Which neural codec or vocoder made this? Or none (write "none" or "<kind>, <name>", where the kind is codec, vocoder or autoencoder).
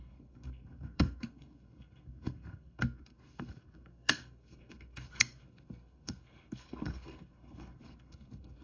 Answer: codec, SNAC